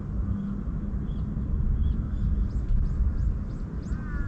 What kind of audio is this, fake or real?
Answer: real